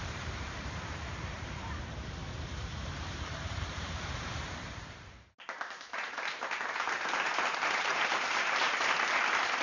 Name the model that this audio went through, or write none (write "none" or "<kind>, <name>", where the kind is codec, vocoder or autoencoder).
vocoder, BigVGAN v2